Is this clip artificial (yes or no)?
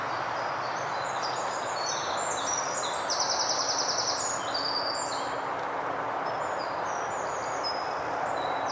no